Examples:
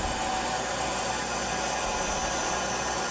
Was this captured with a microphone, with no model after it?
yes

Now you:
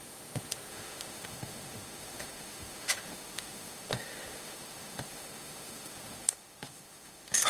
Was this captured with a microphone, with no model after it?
no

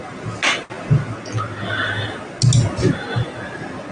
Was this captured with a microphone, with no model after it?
yes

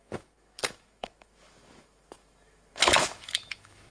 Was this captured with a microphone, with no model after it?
no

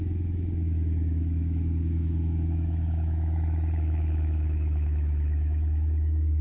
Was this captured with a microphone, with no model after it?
no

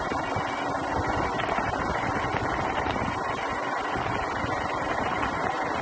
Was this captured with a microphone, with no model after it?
yes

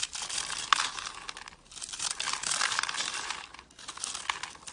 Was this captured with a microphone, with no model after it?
yes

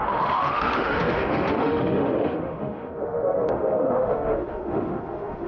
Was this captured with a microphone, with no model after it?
no